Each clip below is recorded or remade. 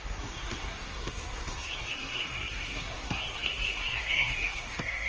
remade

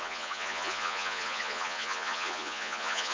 remade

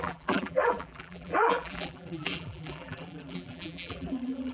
remade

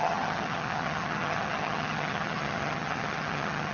remade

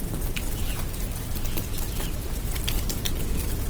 recorded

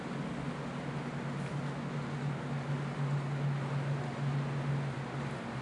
recorded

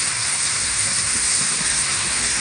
remade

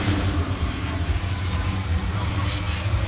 remade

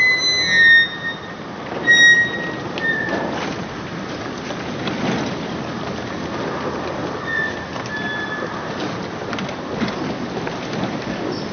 recorded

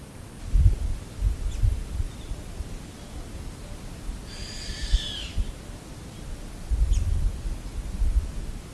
recorded